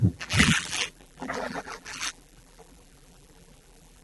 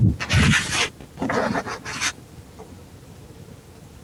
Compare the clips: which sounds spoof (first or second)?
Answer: first